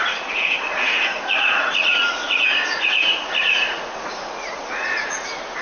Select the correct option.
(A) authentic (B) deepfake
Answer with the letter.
B